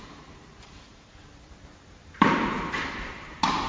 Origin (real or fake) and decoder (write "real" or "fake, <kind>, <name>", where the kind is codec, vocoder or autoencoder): fake, vocoder, BigVGAN v2